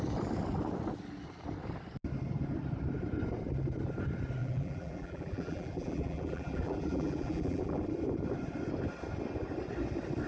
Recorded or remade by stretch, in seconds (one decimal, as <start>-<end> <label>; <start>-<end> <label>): 0.0-4.4 recorded; 4.4-7.8 remade; 7.8-10.3 recorded